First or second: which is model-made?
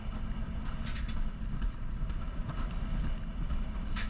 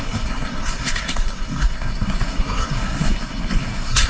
second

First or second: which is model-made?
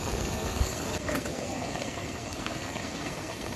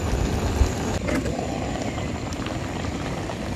first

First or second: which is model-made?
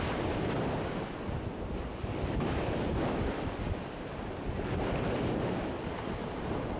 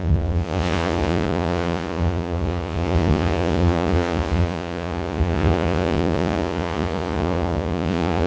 second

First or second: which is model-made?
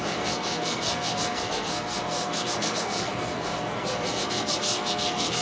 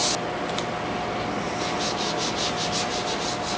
first